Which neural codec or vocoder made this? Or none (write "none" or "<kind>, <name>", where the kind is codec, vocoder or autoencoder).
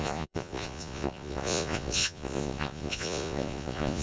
vocoder, Vocos